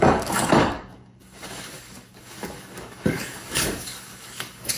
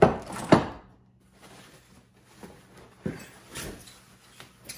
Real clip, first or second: second